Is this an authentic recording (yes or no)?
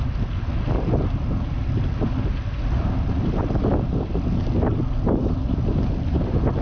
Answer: yes